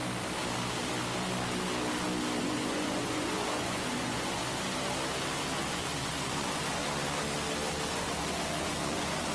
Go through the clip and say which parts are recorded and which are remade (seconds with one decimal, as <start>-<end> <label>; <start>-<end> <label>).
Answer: 0.0-2.4 recorded; 2.4-4.4 remade; 4.4-5.7 recorded; 5.7-6.8 remade; 6.8-7.9 recorded; 7.9-9.3 remade